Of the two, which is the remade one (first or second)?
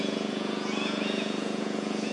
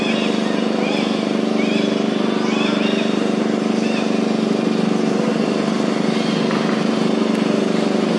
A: first